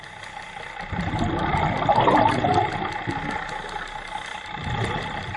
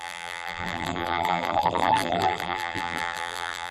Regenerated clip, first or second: second